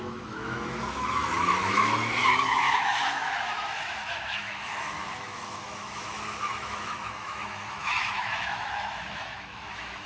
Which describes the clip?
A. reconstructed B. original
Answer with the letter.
A